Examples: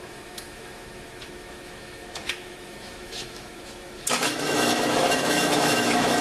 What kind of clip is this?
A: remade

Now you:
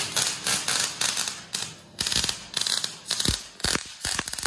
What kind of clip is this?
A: recorded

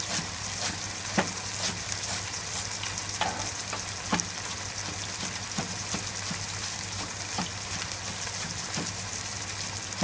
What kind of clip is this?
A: recorded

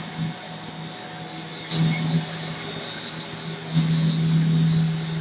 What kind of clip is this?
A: recorded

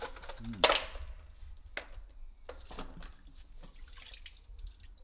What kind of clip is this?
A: recorded